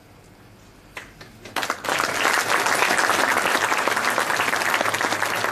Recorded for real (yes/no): yes